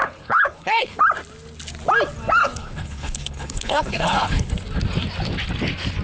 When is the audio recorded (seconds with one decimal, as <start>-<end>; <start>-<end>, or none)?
1.0-2.4; 4.5-6.0